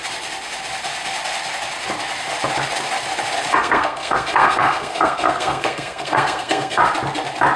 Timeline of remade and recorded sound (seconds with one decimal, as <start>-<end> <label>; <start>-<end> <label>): 0.0-3.5 recorded; 3.5-6.8 remade; 6.8-7.6 recorded